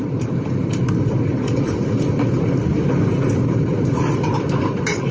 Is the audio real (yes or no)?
yes